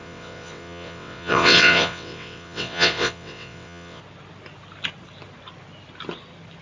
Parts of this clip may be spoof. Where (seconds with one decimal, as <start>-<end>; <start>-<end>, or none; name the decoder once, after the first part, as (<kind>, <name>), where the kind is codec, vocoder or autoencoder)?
0.0-4.0 (vocoder, WaveNeXt)